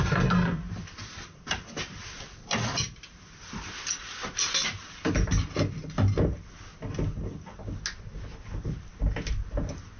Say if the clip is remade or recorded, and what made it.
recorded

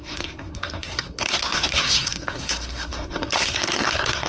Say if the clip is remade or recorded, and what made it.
remade, codec, SNAC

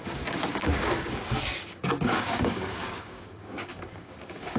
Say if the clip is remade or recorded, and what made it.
remade, codec, DAC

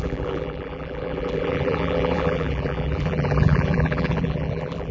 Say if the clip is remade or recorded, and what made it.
remade, vocoder, BigVGAN v2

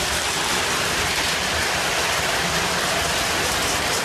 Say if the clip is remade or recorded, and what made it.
recorded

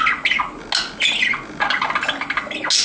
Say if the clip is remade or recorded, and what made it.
recorded